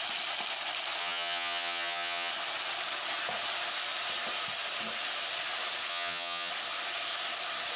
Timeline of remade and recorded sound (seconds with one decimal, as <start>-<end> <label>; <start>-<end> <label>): 0.0-1.0 recorded; 1.0-2.3 remade; 2.3-5.9 recorded; 5.9-6.5 remade; 6.5-7.8 recorded